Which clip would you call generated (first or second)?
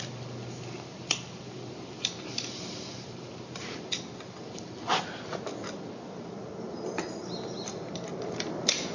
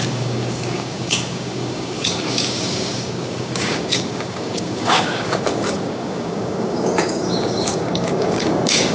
second